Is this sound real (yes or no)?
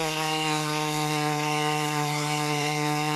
no